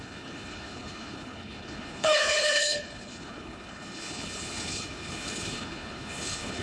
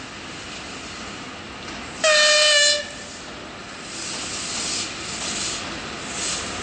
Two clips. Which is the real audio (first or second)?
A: second